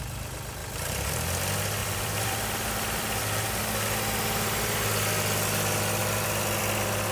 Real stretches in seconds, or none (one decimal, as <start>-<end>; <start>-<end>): 0.0-0.6; 1.1-1.8; 3.6-6.0; 6.6-7.1